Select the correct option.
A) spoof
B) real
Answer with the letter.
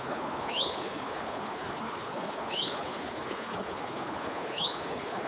A